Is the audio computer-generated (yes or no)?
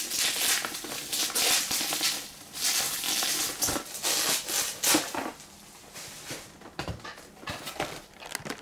no